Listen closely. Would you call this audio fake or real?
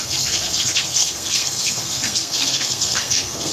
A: fake